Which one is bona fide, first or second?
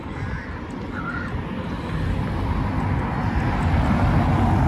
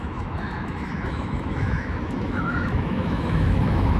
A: first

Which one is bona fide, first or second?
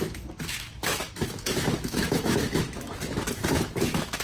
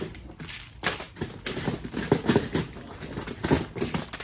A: second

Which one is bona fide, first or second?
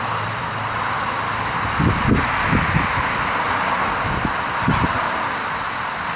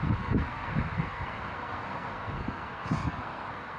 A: first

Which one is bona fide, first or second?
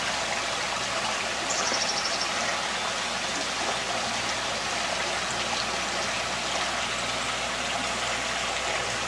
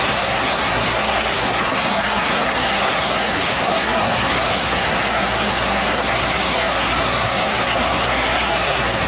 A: first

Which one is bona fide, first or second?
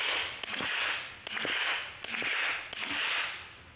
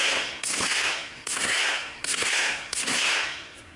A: first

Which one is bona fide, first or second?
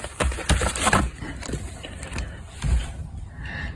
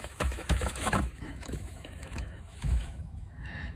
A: first